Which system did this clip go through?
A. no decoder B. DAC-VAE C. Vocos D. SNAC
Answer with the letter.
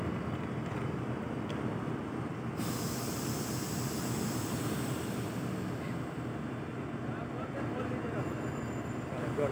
A